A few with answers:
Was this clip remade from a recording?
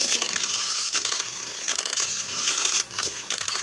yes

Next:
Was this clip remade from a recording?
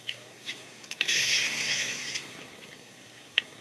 yes